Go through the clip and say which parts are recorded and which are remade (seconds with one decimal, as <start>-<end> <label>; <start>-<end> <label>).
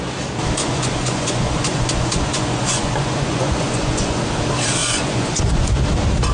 0.0-0.6 recorded; 0.6-4.2 remade; 4.2-4.8 recorded; 4.8-5.8 remade; 5.8-6.3 recorded